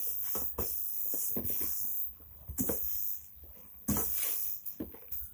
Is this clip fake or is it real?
real